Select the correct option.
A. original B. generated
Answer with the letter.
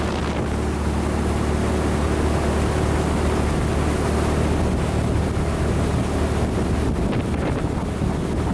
A